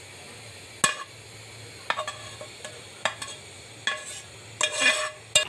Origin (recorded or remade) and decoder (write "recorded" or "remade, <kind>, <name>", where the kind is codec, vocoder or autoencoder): recorded